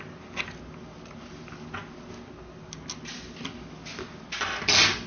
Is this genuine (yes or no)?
yes